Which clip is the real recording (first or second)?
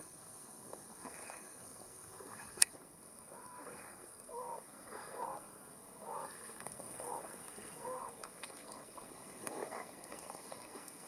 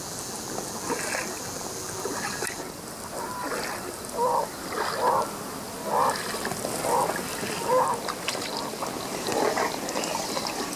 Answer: second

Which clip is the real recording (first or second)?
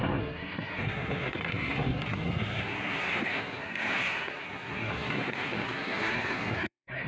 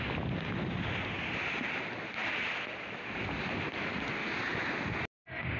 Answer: second